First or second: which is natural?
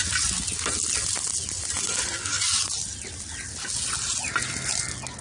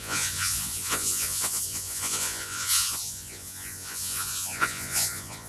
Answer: first